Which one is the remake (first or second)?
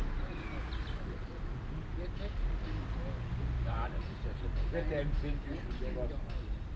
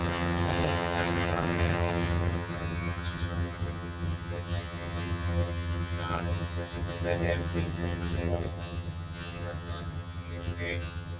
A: second